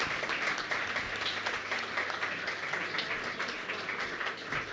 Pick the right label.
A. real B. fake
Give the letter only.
A